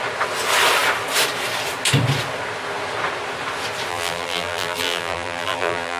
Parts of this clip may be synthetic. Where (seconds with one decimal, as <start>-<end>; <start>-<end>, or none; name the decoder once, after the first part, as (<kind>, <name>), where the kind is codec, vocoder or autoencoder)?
3.9-6.0 (vocoder, BigVGAN v2)